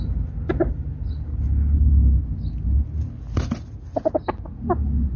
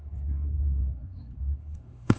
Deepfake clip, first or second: second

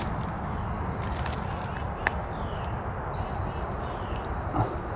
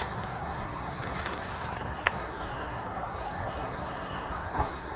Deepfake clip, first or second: second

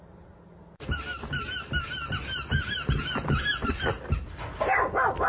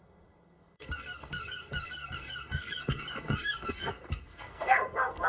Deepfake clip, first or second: second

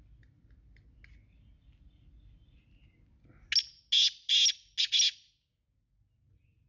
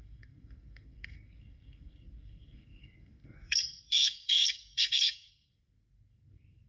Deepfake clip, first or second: second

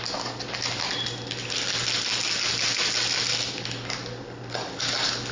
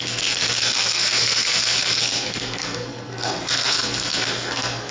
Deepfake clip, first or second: second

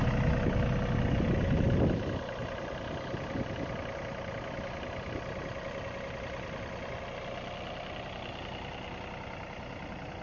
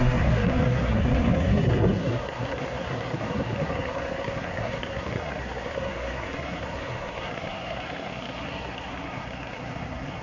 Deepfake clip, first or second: second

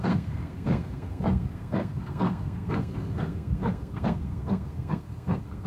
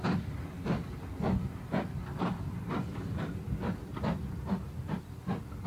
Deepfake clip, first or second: first